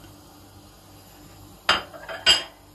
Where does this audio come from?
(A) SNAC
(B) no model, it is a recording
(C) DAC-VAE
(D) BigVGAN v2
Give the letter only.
B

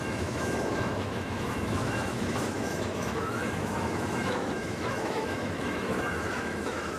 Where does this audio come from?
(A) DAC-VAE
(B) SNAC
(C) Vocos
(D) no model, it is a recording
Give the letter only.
A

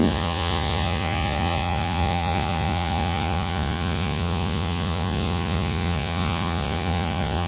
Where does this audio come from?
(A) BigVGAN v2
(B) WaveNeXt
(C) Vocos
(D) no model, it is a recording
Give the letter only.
C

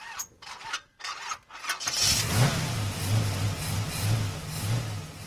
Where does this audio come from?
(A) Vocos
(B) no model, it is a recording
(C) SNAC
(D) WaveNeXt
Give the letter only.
B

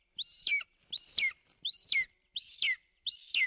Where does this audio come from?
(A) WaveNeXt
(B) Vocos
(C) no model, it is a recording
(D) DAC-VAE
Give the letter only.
C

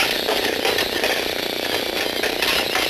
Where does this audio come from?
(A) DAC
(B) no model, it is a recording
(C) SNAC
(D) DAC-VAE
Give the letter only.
B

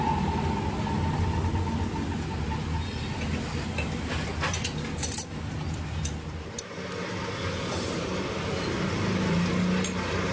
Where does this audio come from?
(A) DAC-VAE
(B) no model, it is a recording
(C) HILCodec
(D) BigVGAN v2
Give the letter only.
B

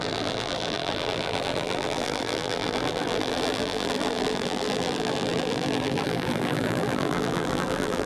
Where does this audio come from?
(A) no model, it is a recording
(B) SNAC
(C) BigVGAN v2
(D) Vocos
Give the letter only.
C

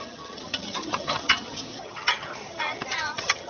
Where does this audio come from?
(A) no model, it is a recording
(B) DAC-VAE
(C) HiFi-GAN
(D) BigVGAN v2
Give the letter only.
C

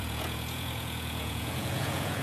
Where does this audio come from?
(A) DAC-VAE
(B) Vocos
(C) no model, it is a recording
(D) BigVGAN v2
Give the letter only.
B